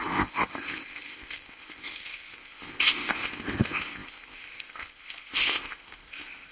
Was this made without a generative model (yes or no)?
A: no